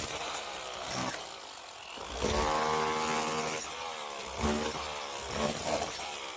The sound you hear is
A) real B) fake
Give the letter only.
A